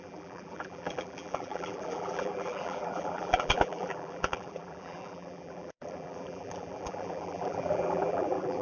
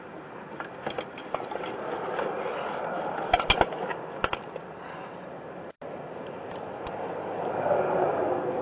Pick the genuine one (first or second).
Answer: second